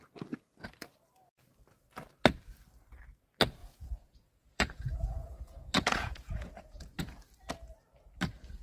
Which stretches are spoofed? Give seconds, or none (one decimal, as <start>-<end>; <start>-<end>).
3.6-7.0